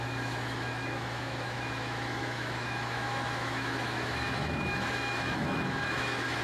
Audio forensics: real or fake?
fake